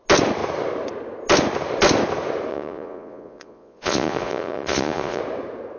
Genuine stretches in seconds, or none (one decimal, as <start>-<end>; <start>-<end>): 0.0-2.5; 5.2-5.8